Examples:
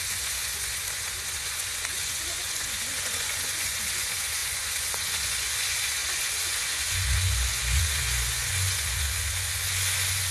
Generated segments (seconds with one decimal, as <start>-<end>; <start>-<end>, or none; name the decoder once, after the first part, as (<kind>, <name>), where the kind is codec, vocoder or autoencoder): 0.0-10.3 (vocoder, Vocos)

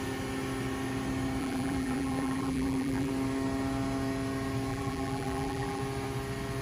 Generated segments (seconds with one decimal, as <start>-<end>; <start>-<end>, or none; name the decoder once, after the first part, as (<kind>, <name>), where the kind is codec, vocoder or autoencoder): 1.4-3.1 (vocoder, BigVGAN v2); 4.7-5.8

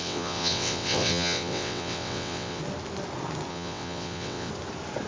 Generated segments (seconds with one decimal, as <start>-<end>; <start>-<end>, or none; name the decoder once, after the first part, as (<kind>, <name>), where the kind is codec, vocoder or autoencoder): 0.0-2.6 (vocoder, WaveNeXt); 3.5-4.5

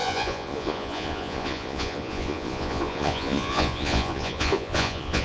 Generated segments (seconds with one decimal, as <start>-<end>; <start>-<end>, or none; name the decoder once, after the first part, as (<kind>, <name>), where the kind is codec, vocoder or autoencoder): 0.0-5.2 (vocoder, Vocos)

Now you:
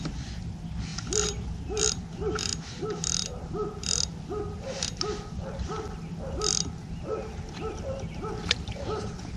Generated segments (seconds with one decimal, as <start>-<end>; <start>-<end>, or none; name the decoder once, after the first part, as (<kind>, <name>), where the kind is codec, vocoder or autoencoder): none

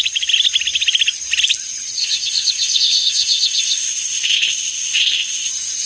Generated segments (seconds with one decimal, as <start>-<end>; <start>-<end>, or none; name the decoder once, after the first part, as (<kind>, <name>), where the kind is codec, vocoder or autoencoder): 2.0-5.5 (codec, ZipCodec)

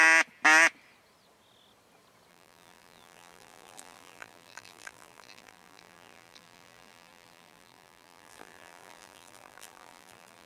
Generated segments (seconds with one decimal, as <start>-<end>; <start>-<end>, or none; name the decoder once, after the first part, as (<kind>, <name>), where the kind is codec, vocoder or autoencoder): 2.3-10.5 (vocoder, BigVGAN v2)

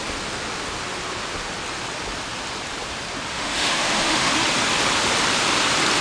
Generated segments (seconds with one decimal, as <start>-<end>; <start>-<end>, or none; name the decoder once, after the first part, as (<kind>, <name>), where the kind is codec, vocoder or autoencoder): 3.3-4.3 (autoencoder, DAC-VAE)